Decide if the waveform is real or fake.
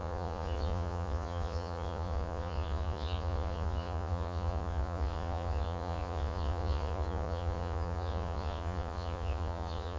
fake